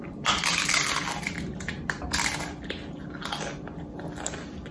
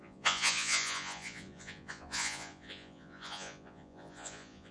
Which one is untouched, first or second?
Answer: first